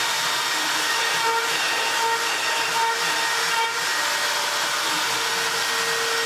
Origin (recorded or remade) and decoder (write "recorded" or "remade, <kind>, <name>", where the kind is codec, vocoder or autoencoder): recorded